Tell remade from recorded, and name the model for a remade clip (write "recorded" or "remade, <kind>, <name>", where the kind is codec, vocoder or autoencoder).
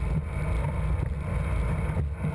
recorded